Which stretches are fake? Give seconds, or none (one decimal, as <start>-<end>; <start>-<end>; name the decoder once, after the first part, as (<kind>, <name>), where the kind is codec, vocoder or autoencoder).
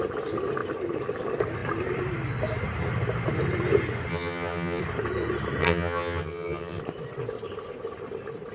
4.1-4.8 (vocoder, HiFi-GAN); 5.6-6.8